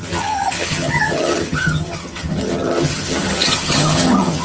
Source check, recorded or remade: remade